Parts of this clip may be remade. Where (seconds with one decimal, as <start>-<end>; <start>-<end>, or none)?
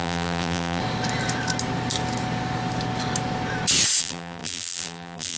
0.0-0.8; 4.0-5.4